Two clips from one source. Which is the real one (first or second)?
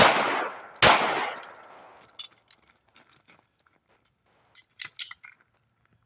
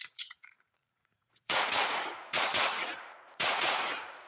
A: first